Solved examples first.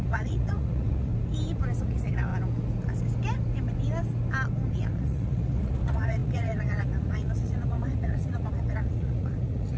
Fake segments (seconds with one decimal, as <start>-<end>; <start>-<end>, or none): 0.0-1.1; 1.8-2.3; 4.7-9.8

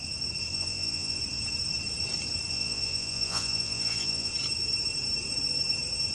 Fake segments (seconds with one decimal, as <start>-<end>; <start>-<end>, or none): 0.5-1.2; 2.5-4.3

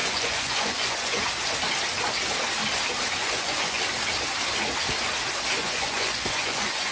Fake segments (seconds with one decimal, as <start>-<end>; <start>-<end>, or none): 0.0-1.2; 3.2-3.8; 5.6-6.9